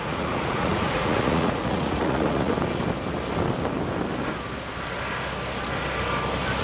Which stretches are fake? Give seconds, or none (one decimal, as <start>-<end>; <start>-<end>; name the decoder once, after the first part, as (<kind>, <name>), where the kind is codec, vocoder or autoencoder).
0.0-2.5 (vocoder, Vocos)